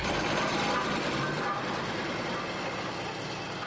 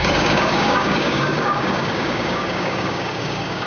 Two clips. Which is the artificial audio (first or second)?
second